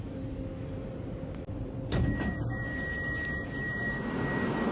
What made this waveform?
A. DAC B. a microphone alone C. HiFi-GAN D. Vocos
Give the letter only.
B